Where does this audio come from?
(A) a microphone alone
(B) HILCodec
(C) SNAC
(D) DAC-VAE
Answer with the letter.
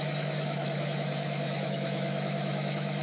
D